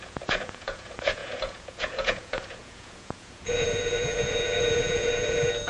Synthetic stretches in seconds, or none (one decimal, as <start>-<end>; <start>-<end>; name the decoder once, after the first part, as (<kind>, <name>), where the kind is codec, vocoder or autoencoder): 0.0-5.7 (vocoder, Vocos)